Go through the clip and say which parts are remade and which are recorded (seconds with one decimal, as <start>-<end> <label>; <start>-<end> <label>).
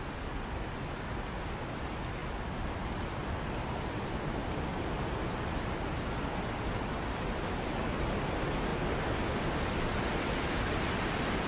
0.0-11.5 recorded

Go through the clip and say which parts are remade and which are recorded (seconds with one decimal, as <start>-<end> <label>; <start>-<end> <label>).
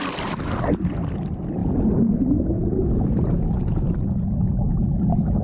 0.0-5.4 recorded